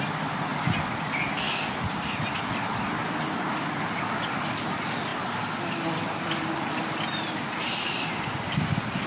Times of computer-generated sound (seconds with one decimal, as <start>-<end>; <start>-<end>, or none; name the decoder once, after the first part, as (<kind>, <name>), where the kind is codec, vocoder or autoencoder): none